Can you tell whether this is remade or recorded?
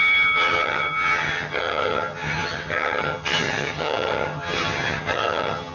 remade